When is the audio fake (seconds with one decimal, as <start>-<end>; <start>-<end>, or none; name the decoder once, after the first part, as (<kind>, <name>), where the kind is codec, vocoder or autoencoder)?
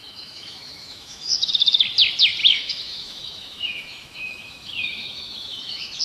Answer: 0.0-1.5 (autoencoder, DAC-VAE); 2.4-6.0